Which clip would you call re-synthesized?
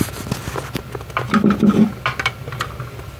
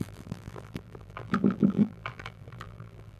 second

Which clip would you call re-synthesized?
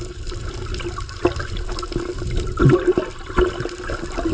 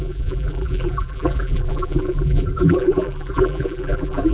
second